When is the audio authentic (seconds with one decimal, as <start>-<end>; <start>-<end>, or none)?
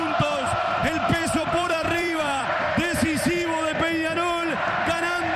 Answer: 0.0-0.8; 2.7-5.4